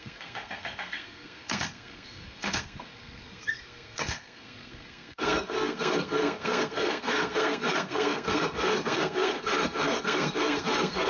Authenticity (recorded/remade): remade